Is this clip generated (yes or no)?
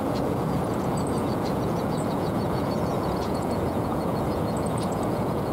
yes